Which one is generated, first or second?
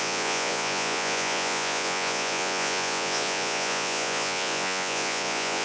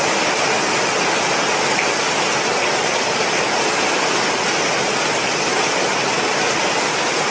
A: first